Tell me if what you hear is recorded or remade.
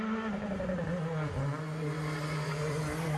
recorded